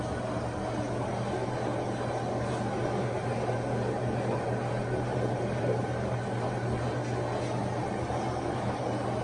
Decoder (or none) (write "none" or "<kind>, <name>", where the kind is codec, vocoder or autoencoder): none